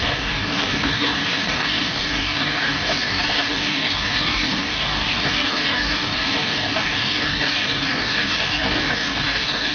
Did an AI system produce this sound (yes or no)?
yes